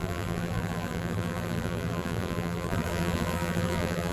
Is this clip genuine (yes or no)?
no